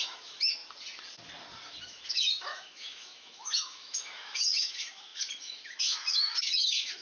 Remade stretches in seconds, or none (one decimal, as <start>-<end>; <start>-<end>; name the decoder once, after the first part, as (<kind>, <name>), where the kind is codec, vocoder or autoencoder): 0.0-0.6 (autoencoder, DAC-VAE); 1.8-7.0